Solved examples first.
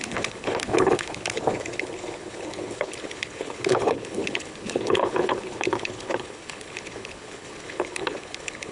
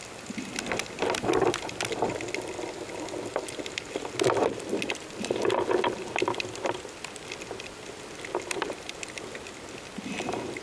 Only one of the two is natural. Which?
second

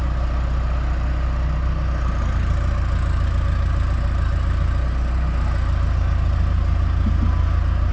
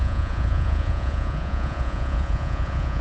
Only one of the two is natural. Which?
first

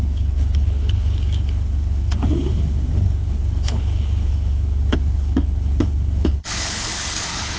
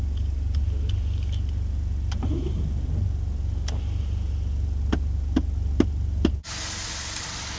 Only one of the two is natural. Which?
second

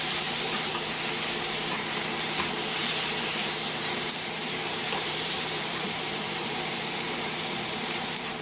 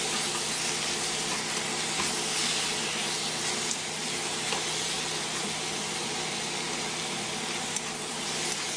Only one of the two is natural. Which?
second